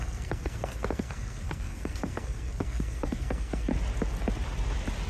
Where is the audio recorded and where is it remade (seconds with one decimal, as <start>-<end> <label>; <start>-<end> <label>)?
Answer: 0.0-3.7 remade; 3.7-5.1 recorded